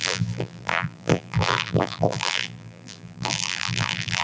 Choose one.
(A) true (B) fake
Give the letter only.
B